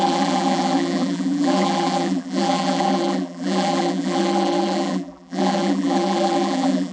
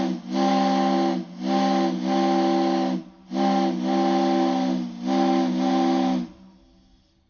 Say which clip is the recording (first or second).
second